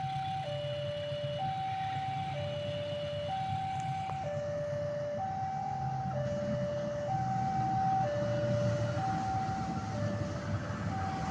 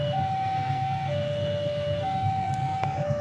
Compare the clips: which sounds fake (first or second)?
second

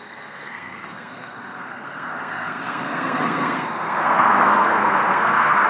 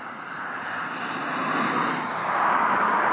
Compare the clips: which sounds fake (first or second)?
first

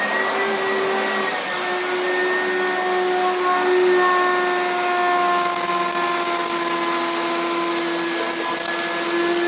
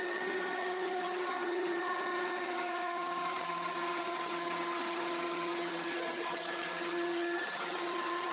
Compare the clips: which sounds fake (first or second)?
second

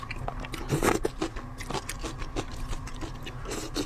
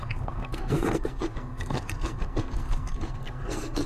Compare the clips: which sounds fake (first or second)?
second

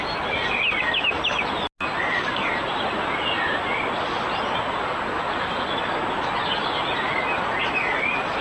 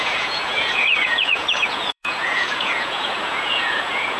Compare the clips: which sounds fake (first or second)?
second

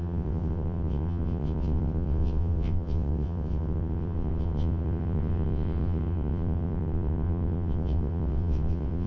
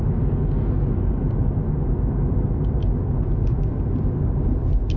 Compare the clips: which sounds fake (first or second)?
first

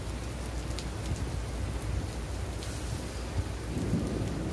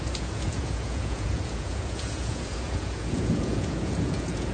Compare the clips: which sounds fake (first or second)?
second